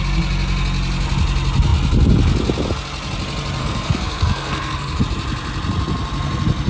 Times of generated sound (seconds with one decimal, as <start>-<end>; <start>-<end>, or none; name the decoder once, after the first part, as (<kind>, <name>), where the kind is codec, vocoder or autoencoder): 3.6-5.0 (codec, SNAC)